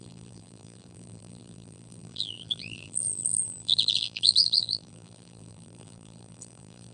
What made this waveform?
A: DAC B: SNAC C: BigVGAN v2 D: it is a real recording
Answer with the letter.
C